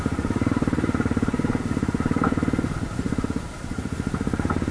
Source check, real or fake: fake